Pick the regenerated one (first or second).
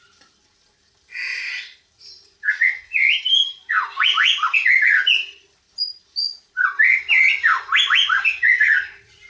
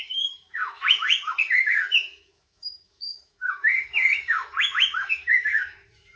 second